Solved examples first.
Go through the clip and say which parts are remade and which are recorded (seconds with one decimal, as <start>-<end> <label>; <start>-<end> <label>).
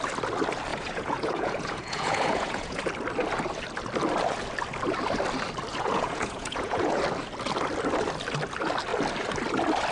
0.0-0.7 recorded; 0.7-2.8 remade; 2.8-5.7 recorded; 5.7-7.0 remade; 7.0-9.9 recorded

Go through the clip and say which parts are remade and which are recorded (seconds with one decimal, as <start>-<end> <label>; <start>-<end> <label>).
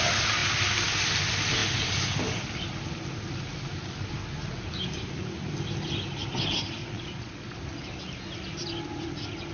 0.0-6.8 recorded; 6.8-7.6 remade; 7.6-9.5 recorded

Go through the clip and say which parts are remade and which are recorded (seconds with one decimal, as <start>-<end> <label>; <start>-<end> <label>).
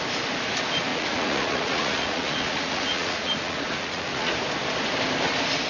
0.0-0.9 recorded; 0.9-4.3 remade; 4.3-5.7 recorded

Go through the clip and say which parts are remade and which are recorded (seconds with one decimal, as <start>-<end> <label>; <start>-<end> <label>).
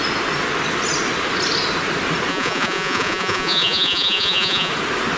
0.0-2.3 recorded; 2.3-4.7 remade; 4.7-5.2 recorded